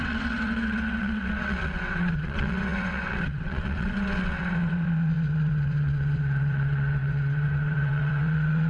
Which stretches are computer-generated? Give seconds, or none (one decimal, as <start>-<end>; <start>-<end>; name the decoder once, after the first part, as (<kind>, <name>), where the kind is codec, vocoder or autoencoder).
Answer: 0.0-8.7 (vocoder, WaveNeXt)

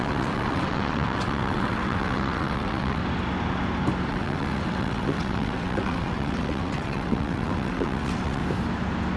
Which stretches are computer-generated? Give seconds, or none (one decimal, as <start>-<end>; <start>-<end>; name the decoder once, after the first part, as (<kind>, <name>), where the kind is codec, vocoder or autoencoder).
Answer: 0.0-3.0 (vocoder, WaveNeXt); 4.1-8.4

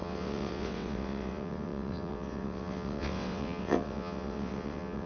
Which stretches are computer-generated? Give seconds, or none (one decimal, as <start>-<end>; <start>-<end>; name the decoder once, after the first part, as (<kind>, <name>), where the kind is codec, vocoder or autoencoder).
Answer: 0.0-5.1 (vocoder, WaveNeXt)

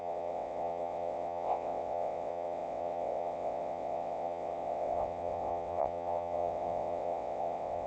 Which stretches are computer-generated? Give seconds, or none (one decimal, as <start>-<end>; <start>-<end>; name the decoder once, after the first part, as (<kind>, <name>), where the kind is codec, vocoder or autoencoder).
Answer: 0.0-7.9 (vocoder, WaveNeXt)

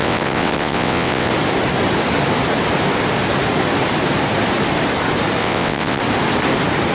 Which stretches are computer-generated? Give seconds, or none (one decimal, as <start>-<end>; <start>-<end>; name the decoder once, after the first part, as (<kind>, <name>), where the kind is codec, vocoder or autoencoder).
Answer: 0.0-1.3 (vocoder, WaveNeXt); 5.4-6.0

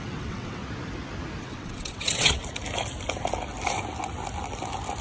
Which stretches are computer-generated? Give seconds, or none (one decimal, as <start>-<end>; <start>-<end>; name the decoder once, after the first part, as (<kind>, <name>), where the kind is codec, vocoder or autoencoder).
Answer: 0.0-0.6 (vocoder, WaveNeXt); 1.4-2.4

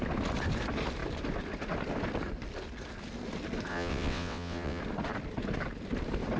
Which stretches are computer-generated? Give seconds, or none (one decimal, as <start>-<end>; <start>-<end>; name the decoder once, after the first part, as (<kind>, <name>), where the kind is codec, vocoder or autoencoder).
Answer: 3.7-4.8 (vocoder, WaveNeXt)